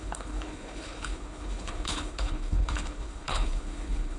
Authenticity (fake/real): fake